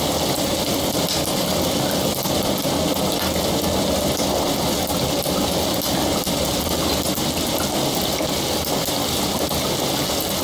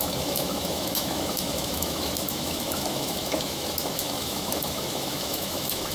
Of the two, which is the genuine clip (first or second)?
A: first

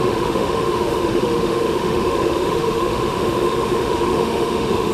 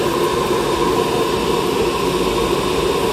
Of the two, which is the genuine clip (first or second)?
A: second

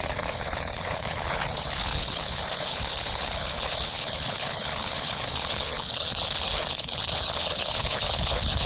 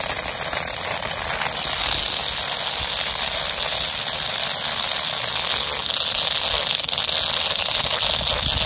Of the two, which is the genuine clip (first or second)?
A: second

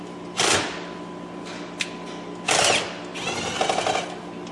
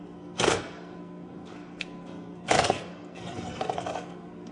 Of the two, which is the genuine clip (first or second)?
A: first